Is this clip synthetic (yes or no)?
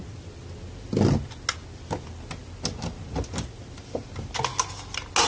no